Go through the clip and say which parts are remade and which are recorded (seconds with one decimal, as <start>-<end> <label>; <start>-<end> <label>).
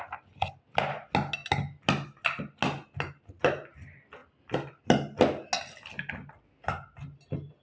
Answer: 0.0-7.6 recorded